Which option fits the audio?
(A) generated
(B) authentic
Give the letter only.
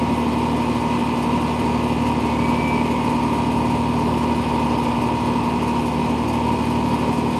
B